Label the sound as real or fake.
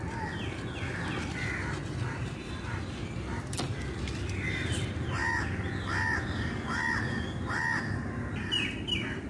real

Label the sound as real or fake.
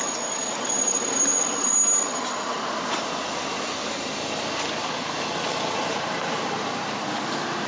real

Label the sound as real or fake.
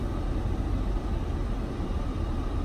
real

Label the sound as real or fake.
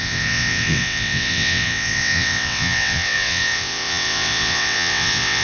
fake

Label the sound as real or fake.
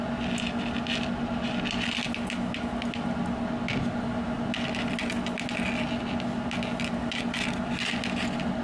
real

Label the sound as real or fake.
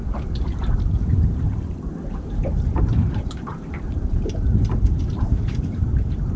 fake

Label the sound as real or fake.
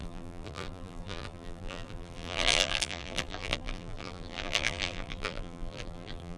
fake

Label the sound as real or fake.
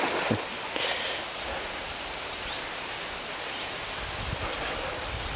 real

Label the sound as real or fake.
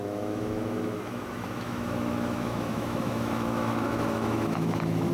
fake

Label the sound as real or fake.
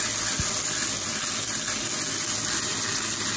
real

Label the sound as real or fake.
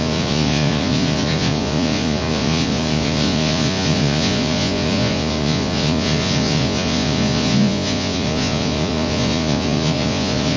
fake